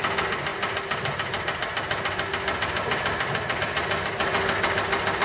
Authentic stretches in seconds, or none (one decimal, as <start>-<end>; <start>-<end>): 0.0-5.2